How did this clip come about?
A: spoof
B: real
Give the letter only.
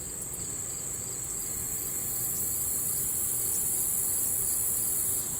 B